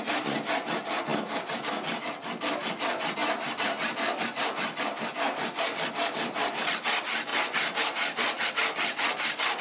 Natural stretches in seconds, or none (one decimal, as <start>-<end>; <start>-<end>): 0.0-9.6